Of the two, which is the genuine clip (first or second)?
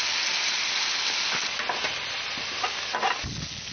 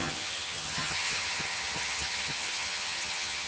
first